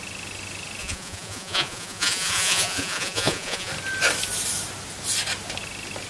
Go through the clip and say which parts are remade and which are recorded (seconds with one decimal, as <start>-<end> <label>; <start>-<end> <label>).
0.0-0.8 recorded; 0.8-3.7 remade; 3.7-6.1 recorded